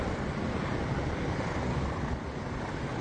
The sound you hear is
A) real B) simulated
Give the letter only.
A